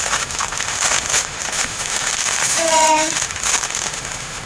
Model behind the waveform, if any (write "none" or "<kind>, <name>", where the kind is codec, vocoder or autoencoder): autoencoder, DAC-VAE